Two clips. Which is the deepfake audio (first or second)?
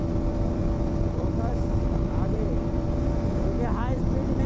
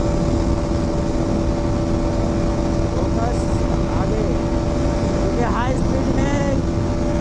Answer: first